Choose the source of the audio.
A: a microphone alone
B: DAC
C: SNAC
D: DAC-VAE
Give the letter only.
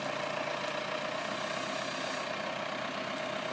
A